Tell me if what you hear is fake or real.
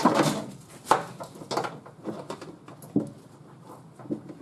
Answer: real